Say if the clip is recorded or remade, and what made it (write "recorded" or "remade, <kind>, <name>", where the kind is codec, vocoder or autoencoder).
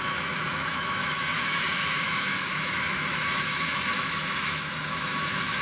remade, autoencoder, DAC-VAE